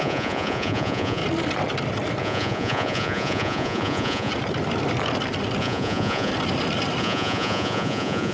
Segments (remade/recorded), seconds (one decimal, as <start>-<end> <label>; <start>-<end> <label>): 0.0-1.2 remade; 1.2-2.2 recorded; 2.2-4.3 remade; 4.3-5.6 recorded; 5.6-6.3 remade; 6.3-7.0 recorded; 7.0-8.3 remade

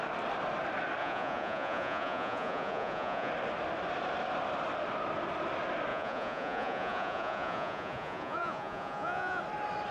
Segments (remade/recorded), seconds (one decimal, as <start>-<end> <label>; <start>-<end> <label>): 0.0-1.0 recorded; 1.0-3.3 remade; 3.3-5.9 recorded; 5.9-9.4 remade; 9.4-9.9 recorded

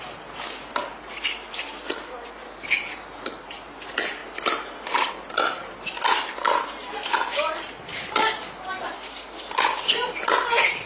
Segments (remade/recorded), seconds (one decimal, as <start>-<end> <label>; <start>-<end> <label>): 0.0-10.9 recorded

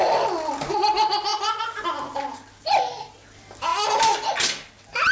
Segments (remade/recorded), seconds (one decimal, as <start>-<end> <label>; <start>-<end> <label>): 0.0-5.1 recorded

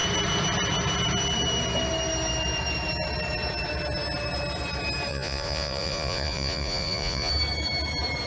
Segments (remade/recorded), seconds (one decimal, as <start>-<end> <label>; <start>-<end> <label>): 0.0-5.1 recorded; 5.1-7.3 remade; 7.3-8.3 recorded